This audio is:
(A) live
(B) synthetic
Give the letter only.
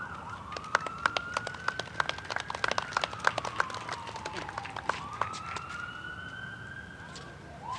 A